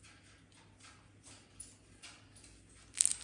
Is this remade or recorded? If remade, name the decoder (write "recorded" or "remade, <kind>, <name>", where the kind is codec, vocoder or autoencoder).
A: recorded